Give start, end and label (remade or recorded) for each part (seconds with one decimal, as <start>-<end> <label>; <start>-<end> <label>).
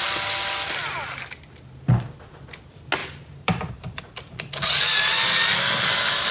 0.0-3.0 recorded; 3.0-4.0 remade; 4.0-6.3 recorded